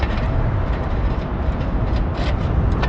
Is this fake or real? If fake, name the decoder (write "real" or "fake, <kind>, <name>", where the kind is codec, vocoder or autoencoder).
fake, vocoder, BigVGAN v2